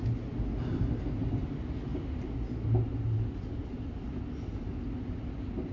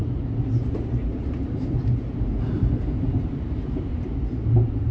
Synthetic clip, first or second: second